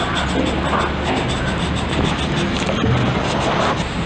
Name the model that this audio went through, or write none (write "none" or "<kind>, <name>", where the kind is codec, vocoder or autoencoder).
none